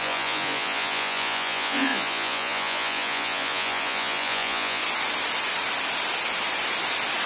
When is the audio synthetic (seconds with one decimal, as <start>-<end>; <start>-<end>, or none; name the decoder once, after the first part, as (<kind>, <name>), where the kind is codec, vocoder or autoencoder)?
0.0-4.8 (vocoder, Vocos)